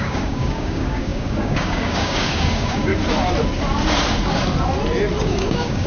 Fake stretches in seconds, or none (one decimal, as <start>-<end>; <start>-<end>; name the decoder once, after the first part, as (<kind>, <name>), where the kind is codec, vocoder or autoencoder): 0.0-2.9 (codec, DAC); 5.2-5.9